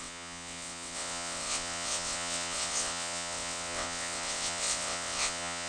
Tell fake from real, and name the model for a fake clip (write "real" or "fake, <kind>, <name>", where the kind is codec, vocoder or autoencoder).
fake, vocoder, WaveNeXt